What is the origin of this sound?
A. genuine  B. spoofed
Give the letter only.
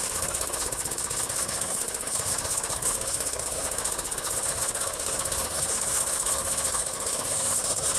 B